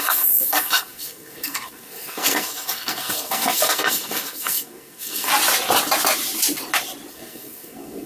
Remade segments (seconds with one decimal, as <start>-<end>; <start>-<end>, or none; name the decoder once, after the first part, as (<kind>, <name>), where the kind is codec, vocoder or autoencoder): 0.0-5.3 (codec, SNAC); 7.1-8.1